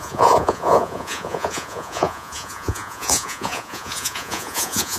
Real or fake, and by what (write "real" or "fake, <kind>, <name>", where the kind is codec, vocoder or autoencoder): fake, vocoder, Vocos